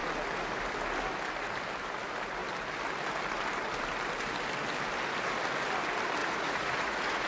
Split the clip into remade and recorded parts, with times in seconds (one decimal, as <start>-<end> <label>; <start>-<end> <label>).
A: 0.0-6.2 recorded; 6.2-7.3 remade